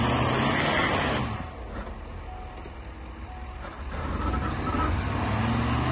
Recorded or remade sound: recorded